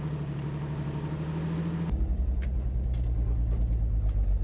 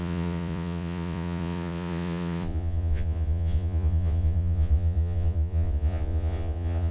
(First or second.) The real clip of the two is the first